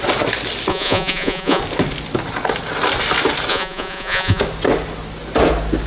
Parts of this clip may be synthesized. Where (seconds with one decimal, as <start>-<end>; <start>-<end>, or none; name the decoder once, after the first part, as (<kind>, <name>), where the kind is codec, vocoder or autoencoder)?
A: 0.7-1.6 (vocoder, Vocos); 3.5-4.4